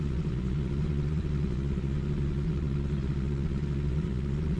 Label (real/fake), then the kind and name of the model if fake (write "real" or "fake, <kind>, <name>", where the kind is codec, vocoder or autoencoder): fake, vocoder, Vocos